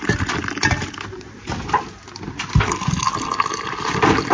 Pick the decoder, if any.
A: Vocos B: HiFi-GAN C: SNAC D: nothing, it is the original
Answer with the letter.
D